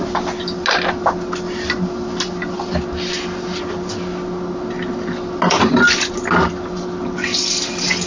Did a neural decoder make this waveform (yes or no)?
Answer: no